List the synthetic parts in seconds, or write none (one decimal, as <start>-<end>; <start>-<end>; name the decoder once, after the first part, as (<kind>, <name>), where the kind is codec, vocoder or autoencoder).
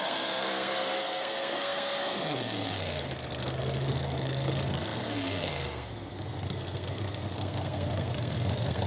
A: 0.0-8.9 (codec, SNAC)